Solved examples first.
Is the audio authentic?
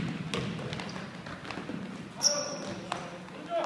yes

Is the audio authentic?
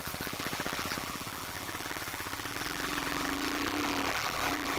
no